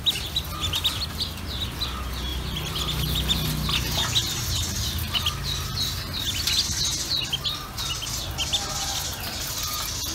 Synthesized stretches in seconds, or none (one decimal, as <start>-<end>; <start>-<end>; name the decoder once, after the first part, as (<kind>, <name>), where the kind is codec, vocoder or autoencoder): none